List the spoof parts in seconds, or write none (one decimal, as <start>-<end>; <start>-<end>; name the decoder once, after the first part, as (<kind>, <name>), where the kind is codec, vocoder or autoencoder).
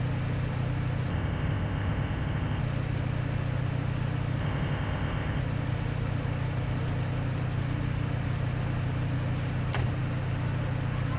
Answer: 1.1-2.6 (codec, ZipCodec); 4.4-5.4